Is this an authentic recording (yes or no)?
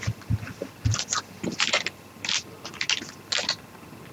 yes